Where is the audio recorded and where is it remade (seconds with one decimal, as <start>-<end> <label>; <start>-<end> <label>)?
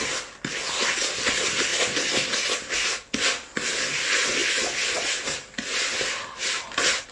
0.0-7.1 recorded